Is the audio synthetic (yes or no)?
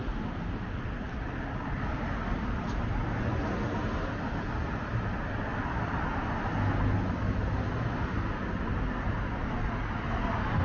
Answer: no